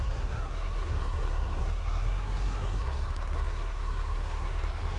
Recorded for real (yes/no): no